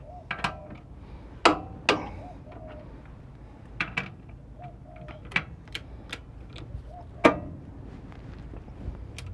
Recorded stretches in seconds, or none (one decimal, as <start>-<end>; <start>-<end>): 0.0-9.3